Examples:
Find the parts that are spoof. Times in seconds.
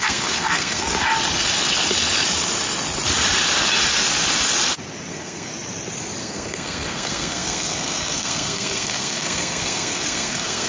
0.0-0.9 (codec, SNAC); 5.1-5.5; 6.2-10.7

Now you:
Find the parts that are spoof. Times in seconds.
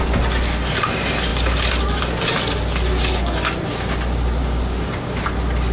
4.4-5.2 (codec, DAC)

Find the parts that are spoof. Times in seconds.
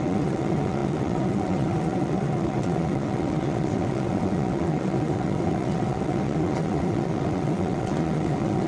0.0-8.7 (vocoder, WaveNeXt)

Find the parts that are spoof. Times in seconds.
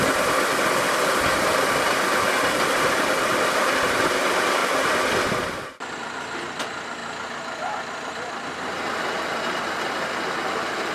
none